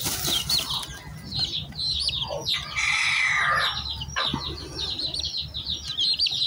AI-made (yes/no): no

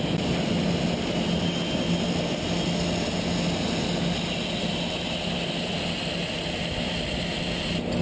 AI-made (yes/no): no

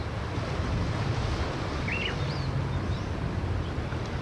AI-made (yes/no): no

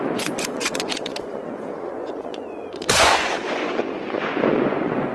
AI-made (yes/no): yes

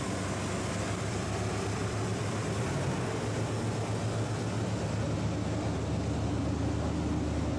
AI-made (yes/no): no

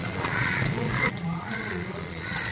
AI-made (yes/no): yes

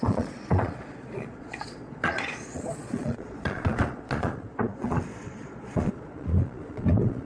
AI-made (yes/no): yes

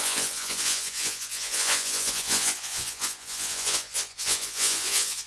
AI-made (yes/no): yes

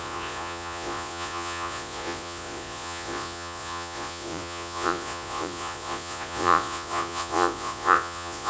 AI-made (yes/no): yes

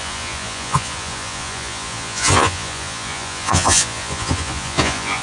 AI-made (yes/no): yes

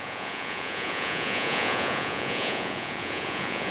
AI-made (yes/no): yes